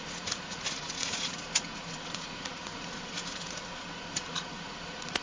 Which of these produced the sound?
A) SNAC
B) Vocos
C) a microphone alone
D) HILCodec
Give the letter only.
B